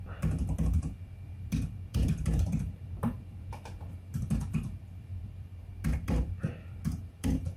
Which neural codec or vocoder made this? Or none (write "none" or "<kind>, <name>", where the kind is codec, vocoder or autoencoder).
vocoder, BigVGAN v2